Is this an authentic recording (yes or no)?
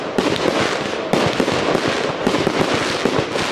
yes